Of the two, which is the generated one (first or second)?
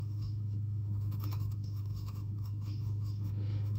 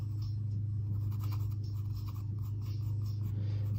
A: first